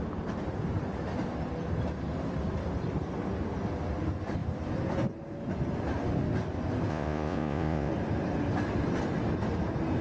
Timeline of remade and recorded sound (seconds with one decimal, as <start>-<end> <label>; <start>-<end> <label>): 0.0-6.9 recorded; 6.9-7.9 remade; 7.9-10.0 recorded

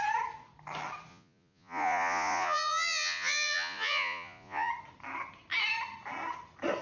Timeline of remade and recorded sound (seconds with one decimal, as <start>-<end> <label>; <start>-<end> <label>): 0.0-1.1 recorded; 1.1-4.7 remade; 4.7-6.8 recorded

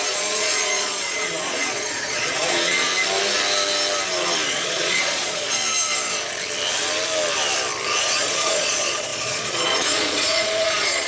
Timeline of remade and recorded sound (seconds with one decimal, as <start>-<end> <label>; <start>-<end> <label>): 0.0-2.9 remade; 2.9-4.5 recorded; 4.5-5.6 remade; 5.6-8.0 recorded; 8.0-11.1 remade

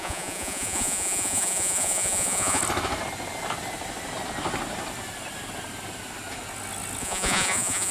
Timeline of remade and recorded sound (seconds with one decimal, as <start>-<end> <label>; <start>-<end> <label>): 0.0-2.6 remade; 2.6-7.0 recorded; 7.0-7.9 remade

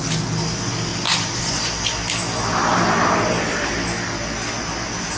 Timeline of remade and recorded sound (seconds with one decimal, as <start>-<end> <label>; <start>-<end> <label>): 0.0-5.2 recorded

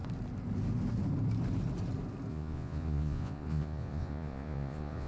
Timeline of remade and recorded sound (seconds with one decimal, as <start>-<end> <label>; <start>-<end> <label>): 0.0-2.3 recorded; 2.3-5.1 remade

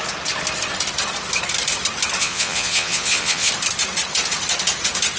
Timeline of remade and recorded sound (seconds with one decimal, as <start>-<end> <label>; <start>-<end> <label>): 0.0-2.2 recorded; 2.2-3.5 remade; 3.5-5.2 recorded